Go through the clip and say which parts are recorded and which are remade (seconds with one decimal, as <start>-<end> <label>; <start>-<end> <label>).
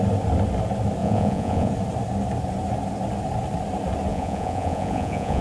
0.0-1.0 recorded; 1.0-1.7 remade; 1.7-4.1 recorded; 4.1-5.4 remade